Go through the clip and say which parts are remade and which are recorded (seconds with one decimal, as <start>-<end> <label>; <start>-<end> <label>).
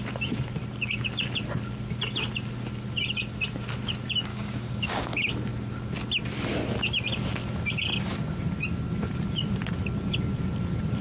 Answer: 0.0-4.3 recorded; 4.3-5.1 remade; 5.1-11.0 recorded